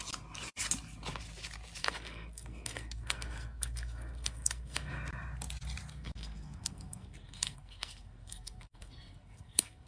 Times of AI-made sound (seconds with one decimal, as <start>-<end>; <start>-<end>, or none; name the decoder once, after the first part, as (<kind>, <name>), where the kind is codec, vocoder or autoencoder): 1.8-4.9 (codec, SNAC); 5.9-9.9